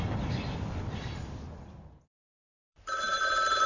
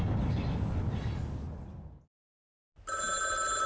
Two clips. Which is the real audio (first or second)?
second